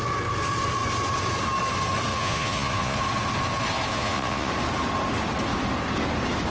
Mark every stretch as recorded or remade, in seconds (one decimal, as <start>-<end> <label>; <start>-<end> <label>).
0.0-2.1 recorded; 2.1-3.0 remade; 3.0-3.9 recorded; 3.9-4.5 remade; 4.5-6.5 recorded